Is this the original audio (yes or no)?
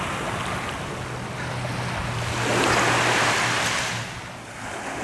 yes